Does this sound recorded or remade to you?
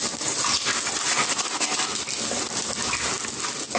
recorded